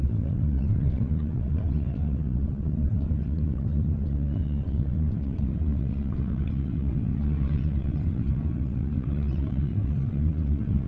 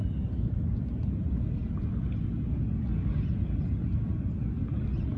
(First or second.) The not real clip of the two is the first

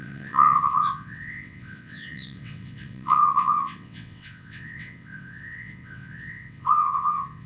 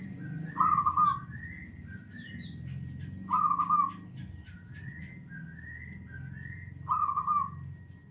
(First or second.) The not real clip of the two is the first